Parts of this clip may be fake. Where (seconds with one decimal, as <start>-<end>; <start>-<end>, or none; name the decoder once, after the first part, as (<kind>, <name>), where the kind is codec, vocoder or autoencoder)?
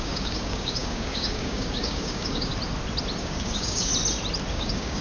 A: 0.0-2.5 (codec, DAC); 3.2-3.9; 4.5-5.0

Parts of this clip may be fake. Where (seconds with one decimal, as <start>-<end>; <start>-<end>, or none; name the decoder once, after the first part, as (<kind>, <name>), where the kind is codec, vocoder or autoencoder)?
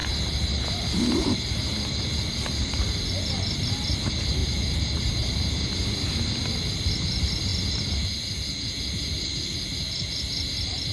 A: 4.4-6.1 (vocoder, BigVGAN v2)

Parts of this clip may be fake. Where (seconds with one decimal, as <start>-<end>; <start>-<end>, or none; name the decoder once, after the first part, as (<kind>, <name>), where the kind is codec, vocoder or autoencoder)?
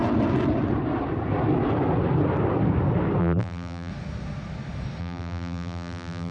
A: 3.2-3.9 (vocoder, BigVGAN v2); 5.0-6.3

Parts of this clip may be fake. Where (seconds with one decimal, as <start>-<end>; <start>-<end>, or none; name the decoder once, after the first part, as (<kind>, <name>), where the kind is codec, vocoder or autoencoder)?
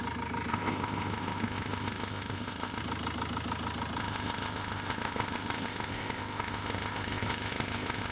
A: 0.5-2.8 (codec, ZipCodec); 4.0-8.1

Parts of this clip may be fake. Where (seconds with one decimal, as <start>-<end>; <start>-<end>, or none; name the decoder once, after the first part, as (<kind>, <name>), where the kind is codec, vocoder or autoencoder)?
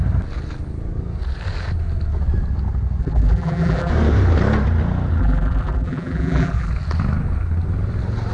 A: 3.0-3.9 (vocoder, BigVGAN v2); 5.2-6.7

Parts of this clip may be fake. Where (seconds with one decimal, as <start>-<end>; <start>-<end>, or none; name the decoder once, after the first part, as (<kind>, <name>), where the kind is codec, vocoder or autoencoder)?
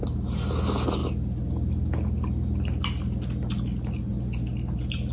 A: none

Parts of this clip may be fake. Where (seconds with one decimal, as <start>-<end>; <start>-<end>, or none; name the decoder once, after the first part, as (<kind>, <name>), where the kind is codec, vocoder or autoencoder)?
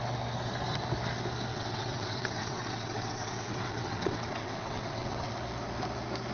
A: 1.5-5.3 (vocoder, WaveNeXt)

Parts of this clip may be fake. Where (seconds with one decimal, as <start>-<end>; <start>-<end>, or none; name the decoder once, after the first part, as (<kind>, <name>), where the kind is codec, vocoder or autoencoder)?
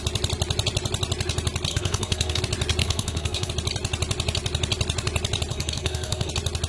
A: 1.7-2.4 (codec, SNAC); 2.8-3.5; 5.5-6.3